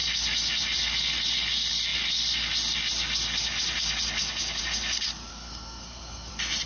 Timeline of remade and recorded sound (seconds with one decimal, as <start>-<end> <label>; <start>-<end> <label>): 0.0-5.3 recorded; 5.3-6.3 remade; 6.3-6.7 recorded